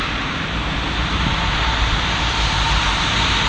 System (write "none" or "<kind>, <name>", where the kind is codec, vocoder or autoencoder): vocoder, BigVGAN v2